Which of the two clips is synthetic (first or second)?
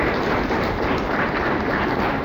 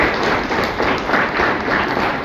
second